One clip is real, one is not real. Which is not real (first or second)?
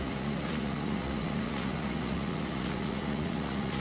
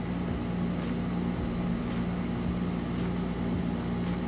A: first